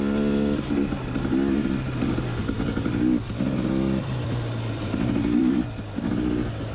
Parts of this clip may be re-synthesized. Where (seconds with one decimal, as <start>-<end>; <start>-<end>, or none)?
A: 2.4-6.1